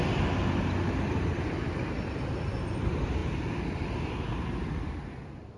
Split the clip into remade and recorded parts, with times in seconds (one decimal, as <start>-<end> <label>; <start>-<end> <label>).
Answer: 0.0-5.6 recorded